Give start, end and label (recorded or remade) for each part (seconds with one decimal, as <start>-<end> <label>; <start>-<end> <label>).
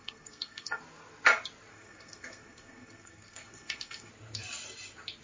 0.0-0.8 remade; 0.8-1.7 recorded; 1.7-4.1 remade; 4.1-5.2 recorded